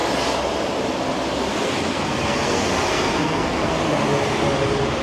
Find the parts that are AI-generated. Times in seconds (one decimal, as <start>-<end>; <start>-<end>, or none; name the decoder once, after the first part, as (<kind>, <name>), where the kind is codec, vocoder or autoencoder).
1.5-3.8 (codec, SNAC)